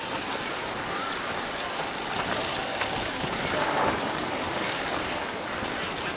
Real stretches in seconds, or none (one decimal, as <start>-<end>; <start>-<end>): 0.0-0.6; 1.4-2.5; 5.5-6.2